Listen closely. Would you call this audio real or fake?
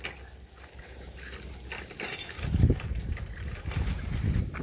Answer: real